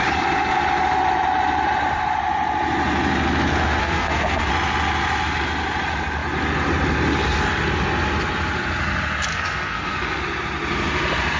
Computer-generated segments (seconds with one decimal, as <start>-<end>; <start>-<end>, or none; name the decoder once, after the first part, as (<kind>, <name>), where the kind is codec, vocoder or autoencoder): 3.8-4.5 (codec, SNAC); 9.3-10.2